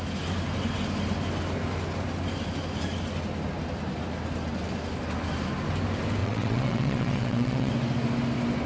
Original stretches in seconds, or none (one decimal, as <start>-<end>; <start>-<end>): 0.0-6.2; 7.7-8.7